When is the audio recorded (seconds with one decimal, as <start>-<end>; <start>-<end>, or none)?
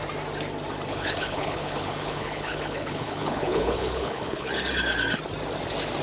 0.0-0.9; 4.5-6.0